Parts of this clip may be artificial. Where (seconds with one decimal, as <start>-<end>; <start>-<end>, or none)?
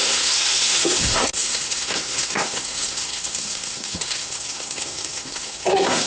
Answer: 0.0-6.1